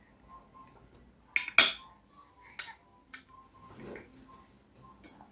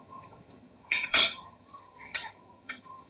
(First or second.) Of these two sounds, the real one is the first